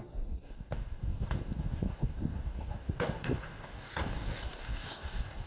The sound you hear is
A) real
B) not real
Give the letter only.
B